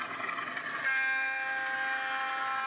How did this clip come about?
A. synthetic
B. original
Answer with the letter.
B